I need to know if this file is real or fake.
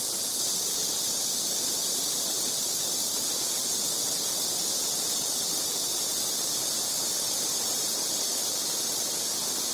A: real